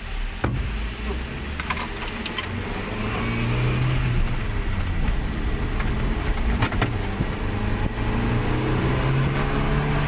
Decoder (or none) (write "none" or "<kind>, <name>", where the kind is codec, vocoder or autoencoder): none